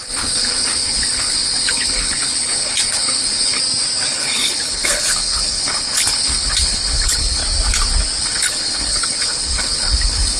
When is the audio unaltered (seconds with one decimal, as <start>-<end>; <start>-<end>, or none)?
3.6-4.1; 7.4-8.2